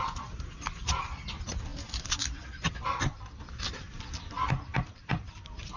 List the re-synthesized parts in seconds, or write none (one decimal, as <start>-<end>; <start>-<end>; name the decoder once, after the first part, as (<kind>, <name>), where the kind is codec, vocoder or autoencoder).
none